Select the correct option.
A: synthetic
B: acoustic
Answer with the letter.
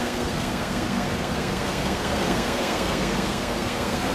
A